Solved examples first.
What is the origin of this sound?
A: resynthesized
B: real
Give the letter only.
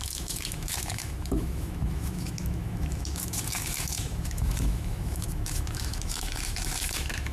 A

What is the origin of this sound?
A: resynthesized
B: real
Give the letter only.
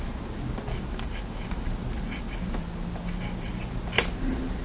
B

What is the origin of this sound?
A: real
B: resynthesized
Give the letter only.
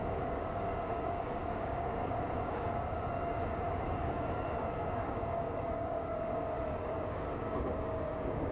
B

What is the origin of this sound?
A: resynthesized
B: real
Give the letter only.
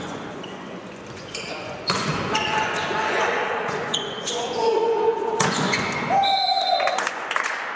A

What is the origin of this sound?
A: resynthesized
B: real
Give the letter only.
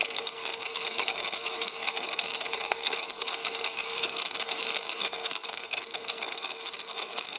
A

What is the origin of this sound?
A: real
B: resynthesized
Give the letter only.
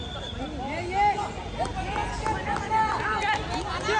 A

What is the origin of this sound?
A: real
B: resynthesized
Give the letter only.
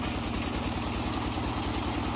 A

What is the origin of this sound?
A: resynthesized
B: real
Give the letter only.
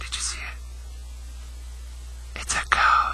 B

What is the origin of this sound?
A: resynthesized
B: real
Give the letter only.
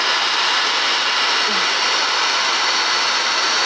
B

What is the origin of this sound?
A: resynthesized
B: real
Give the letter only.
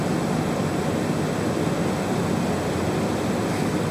B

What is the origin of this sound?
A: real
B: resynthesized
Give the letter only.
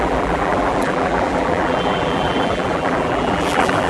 B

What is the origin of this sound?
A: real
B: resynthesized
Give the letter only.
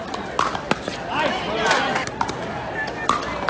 A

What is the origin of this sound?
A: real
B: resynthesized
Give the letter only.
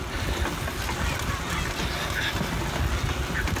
A